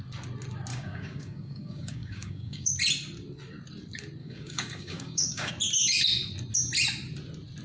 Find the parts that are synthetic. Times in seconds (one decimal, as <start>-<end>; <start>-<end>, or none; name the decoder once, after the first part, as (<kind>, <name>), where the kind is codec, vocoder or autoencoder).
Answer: 0.7-2.7 (codec, DAC); 4.2-5.5

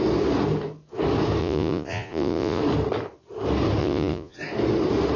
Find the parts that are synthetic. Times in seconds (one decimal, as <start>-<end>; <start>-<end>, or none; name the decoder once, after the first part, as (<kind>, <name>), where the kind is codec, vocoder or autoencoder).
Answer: 1.4-2.6 (vocoder, Vocos); 3.8-4.4

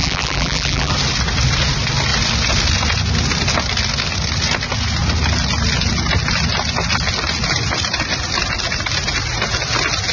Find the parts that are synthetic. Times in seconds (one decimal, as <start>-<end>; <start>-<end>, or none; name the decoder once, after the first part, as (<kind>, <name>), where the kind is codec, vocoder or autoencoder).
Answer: 0.0-0.9 (vocoder, BigVGAN v2)

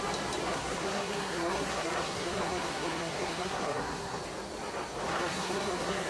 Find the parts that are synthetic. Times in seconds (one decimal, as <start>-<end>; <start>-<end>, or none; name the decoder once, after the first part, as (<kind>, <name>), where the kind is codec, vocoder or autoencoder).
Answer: 0.5-4.2 (codec, SNAC); 5.1-6.1

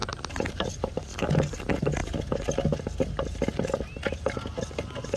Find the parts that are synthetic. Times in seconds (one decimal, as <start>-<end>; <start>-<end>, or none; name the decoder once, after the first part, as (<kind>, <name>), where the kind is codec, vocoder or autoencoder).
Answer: none

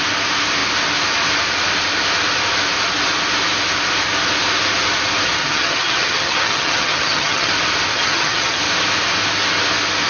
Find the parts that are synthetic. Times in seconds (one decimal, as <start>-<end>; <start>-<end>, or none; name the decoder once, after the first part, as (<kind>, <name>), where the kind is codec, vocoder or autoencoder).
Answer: 5.4-7.5 (vocoder, HiFi-GAN); 7.9-8.6